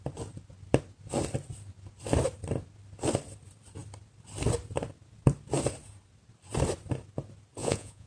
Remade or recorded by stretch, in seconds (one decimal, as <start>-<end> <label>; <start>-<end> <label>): 0.0-7.6 recorded; 7.6-8.1 remade